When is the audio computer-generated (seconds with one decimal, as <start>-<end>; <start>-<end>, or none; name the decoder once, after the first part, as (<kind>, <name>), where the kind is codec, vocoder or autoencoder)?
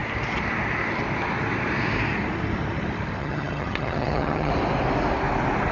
3.2-4.5 (vocoder, HiFi-GAN)